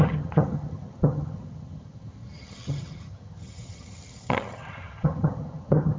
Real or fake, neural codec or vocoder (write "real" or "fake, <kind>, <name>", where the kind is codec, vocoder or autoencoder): fake, vocoder, HiFi-GAN